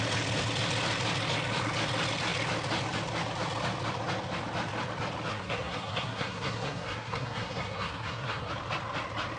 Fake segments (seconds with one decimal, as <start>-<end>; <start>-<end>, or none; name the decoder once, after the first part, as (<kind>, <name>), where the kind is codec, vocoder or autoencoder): 5.3-8.5 (codec, SNAC)